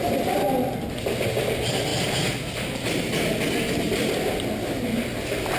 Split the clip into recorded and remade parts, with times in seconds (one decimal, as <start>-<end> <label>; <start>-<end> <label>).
0.0-5.6 recorded